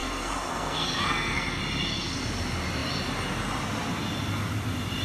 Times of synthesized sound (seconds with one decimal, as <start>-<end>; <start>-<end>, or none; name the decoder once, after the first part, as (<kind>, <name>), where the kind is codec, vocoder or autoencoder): 0.0-1.6 (codec, SNAC)